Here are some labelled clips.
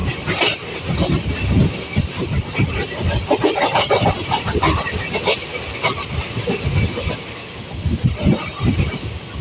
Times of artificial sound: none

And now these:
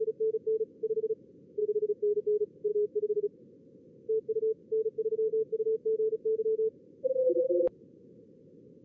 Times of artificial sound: 1.6-2.2; 2.7-3.4; 5.3-7.6

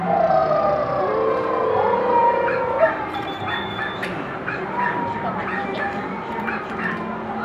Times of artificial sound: 0.4-1.0; 2.2-6.6

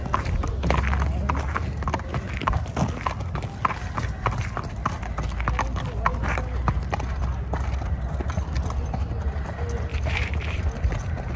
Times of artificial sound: 6.1-7.2; 9.9-10.6

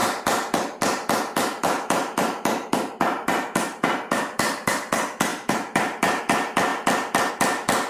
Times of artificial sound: 0.0-4.7; 5.3-6.2

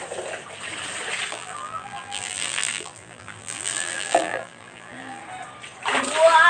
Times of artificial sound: 1.3-5.2

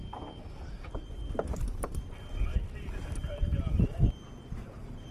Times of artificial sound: 1.5-2.0

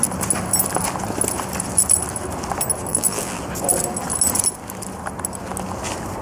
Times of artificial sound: 2.9-3.4